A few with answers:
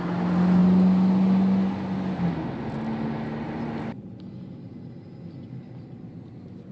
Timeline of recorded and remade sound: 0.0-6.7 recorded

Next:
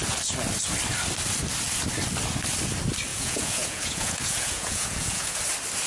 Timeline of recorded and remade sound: 0.0-3.1 recorded; 3.1-5.4 remade; 5.4-5.9 recorded

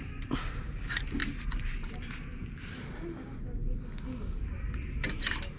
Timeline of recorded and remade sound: 0.0-5.6 recorded

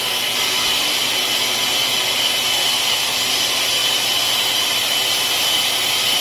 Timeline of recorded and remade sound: 0.0-2.6 recorded; 2.6-3.2 remade; 3.2-6.2 recorded

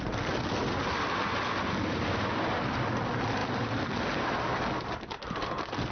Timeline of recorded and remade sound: 0.0-5.9 recorded

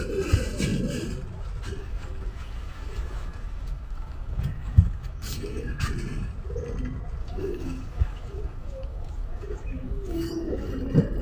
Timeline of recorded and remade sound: 0.0-1.8 recorded; 1.8-5.8 remade; 5.8-7.2 recorded; 7.2-10.7 remade; 10.7-11.2 recorded